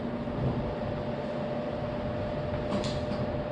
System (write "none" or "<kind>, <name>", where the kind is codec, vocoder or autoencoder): none